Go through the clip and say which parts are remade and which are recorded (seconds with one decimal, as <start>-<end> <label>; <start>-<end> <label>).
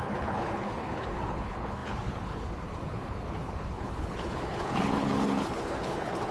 0.0-6.3 remade